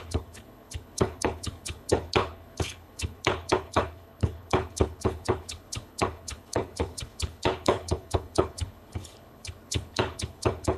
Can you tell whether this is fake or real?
fake